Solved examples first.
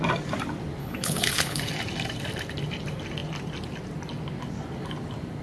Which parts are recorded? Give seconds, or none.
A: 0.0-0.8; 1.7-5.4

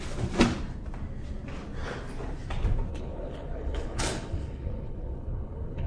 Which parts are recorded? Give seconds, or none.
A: 0.0-2.9

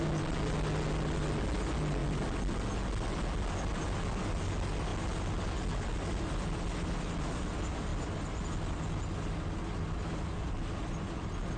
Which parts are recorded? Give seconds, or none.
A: 0.0-11.6